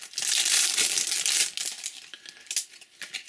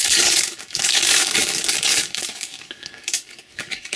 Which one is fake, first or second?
second